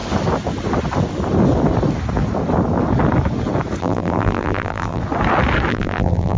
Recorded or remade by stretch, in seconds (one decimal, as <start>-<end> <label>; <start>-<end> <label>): 0.0-3.8 recorded; 3.8-5.0 remade; 5.0-5.7 recorded; 5.7-6.4 remade